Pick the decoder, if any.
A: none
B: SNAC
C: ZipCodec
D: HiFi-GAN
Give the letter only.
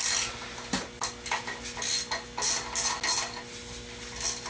A